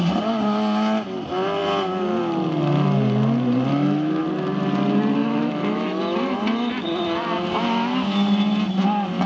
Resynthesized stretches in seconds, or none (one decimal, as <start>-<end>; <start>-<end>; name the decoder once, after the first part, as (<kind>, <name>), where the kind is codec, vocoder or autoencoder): 3.7-4.2 (autoencoder, DAC-VAE); 5.2-6.0